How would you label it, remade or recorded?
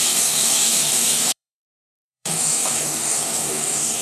remade